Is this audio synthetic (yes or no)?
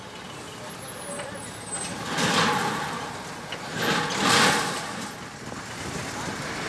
no